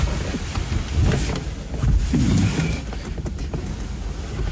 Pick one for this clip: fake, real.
real